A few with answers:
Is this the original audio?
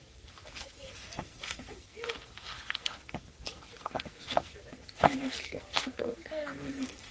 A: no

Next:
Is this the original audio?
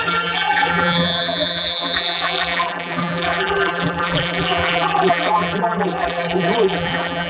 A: no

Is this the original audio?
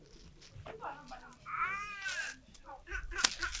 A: yes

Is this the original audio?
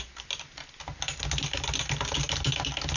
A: yes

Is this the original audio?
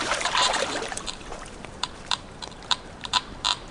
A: no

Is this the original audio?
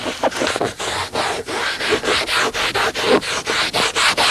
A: yes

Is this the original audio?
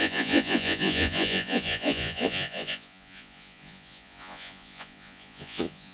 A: no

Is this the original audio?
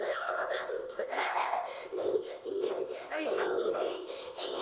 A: no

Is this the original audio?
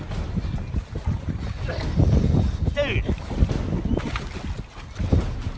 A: yes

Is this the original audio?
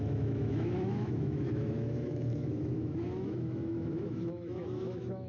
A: no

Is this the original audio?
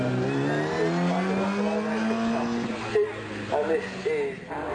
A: yes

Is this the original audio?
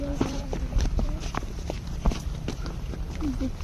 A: no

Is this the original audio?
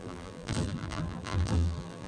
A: no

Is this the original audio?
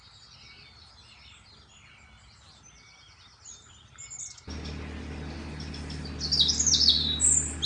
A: yes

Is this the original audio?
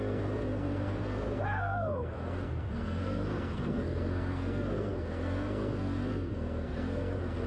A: no